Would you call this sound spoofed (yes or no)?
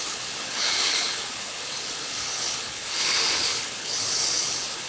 yes